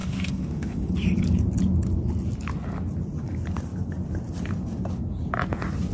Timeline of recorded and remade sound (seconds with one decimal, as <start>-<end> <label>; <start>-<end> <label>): 0.0-0.9 remade; 0.9-5.9 recorded